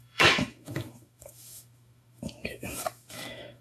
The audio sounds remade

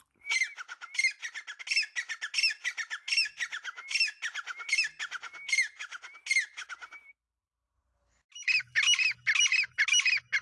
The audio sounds recorded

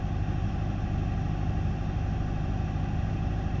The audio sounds recorded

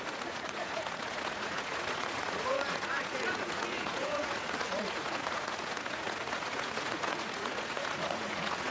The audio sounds remade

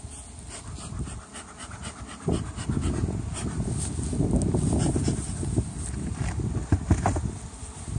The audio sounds recorded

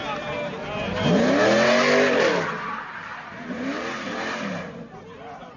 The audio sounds recorded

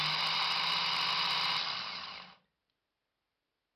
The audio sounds recorded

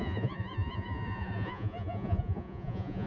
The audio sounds remade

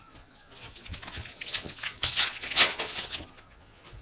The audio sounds remade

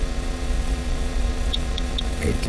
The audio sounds remade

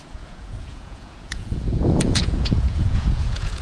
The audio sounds remade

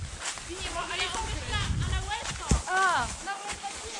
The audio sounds recorded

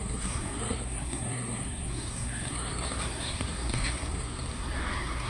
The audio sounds remade